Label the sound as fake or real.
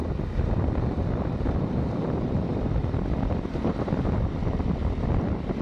fake